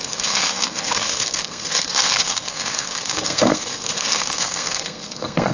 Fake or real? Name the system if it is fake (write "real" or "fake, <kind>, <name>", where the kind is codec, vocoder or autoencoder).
fake, codec, SNAC